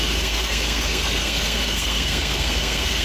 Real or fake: fake